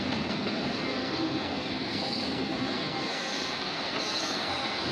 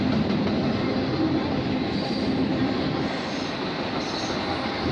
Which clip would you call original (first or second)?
second